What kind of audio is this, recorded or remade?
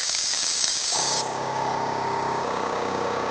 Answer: remade